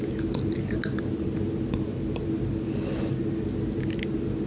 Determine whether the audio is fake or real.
real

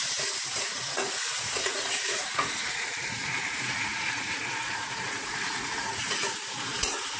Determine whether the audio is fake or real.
fake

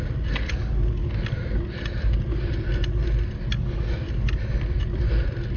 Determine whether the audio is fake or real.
real